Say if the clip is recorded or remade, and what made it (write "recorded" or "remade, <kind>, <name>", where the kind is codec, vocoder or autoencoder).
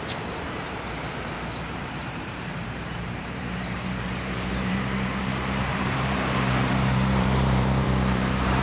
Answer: remade, vocoder, BigVGAN v2